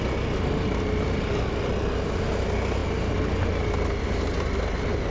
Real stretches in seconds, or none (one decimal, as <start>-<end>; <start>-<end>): 0.0-5.1